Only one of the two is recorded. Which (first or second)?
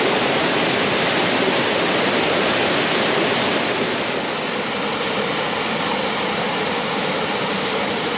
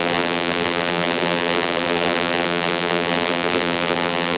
first